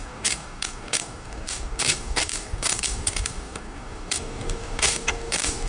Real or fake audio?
fake